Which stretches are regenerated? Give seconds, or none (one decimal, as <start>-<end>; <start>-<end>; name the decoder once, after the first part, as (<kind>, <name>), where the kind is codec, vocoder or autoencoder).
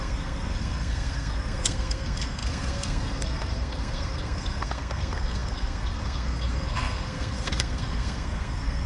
0.0-8.9 (codec, SNAC)